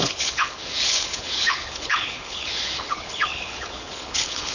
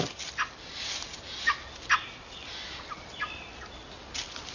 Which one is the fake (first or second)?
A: first